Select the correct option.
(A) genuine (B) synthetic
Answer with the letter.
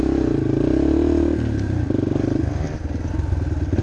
A